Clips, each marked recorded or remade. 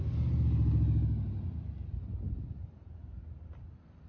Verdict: recorded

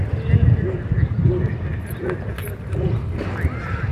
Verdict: recorded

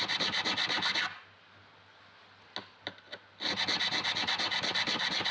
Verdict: recorded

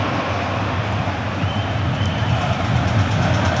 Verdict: recorded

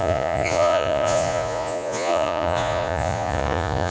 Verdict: remade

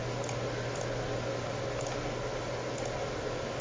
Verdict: recorded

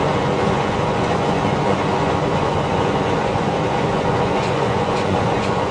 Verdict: remade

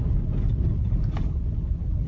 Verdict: recorded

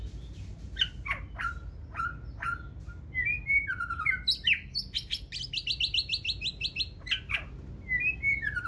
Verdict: recorded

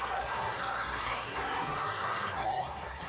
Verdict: remade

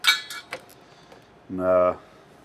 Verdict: recorded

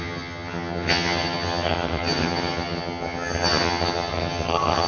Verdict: remade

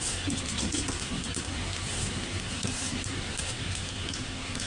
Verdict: remade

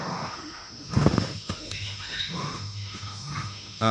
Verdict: remade